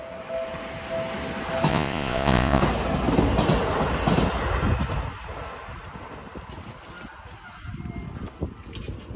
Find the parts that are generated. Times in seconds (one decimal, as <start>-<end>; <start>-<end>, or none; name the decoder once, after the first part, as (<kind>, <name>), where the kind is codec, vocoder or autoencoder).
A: 1.7-2.6 (vocoder, Vocos)